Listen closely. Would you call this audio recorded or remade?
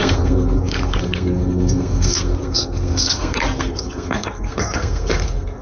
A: remade